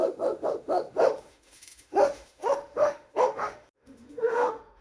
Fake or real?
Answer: fake